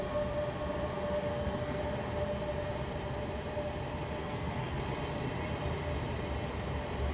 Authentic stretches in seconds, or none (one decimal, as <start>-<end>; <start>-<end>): 0.0-1.3; 1.8-4.2; 4.8-7.1